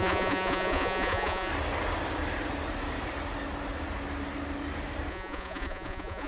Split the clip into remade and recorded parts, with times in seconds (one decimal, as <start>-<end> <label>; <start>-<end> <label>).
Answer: 0.0-1.5 remade; 1.5-5.1 recorded; 5.1-6.3 remade